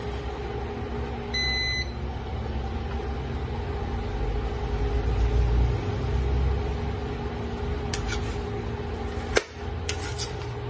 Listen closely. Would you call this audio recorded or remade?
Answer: recorded